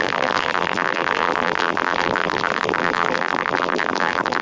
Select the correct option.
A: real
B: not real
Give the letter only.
B